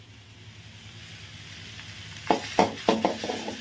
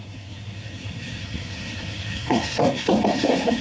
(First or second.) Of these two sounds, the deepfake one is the second